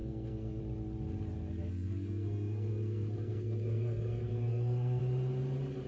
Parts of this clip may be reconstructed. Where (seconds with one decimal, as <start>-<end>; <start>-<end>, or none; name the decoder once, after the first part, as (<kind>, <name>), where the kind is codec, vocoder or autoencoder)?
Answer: 0.0-0.6 (codec, SNAC); 1.6-5.0